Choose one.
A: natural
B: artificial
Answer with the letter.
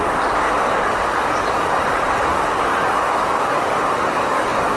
B